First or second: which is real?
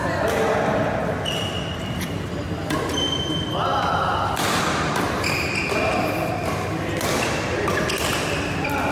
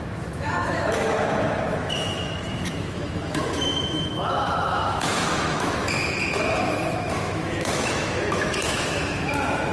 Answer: first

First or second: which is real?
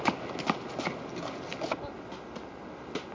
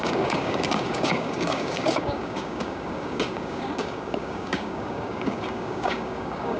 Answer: first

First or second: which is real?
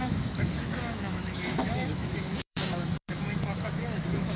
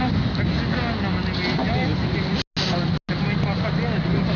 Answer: second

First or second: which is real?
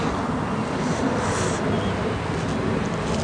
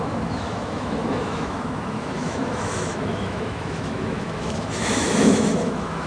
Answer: first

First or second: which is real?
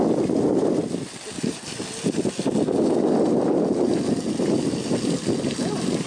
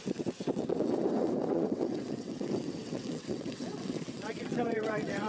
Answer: first